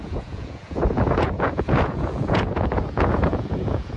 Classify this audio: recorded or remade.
remade